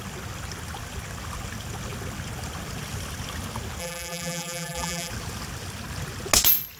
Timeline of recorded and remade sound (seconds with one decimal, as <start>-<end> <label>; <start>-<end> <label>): 0.0-3.8 recorded; 3.8-5.1 remade; 5.1-6.8 recorded